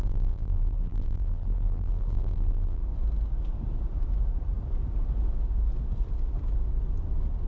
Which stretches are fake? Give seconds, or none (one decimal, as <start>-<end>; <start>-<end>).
0.0-2.8